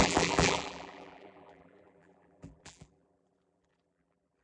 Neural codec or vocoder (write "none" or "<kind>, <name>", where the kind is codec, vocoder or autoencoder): vocoder, BigVGAN v2